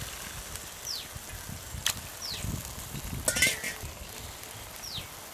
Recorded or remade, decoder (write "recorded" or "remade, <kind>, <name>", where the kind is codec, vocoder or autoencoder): recorded